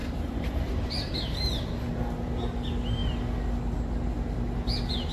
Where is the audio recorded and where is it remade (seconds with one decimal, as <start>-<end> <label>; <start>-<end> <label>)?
0.0-1.8 remade; 1.8-5.1 recorded